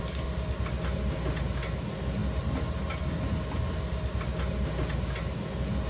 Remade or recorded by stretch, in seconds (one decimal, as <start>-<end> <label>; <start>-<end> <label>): 0.0-5.9 recorded